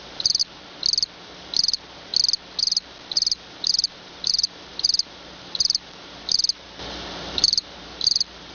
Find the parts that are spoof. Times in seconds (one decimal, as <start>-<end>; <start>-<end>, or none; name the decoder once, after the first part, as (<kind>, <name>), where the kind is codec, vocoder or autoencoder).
0.0-0.4 (vocoder, BigVGAN v2); 1.2-2.1; 2.6-8.5